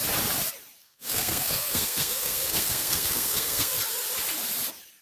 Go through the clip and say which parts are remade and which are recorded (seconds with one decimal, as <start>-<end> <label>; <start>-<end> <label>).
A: 0.0-0.8 recorded; 0.8-3.8 remade; 3.8-5.0 recorded